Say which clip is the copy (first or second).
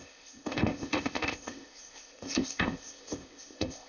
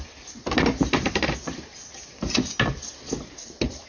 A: first